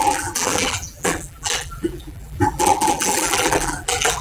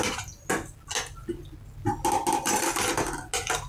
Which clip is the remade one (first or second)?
first